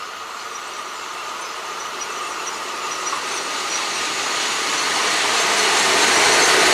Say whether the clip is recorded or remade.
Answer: remade